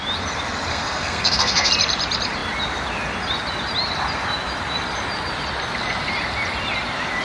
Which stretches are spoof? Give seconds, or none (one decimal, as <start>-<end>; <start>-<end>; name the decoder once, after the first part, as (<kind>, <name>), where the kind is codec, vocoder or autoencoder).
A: 0.7-1.7 (codec, SNAC)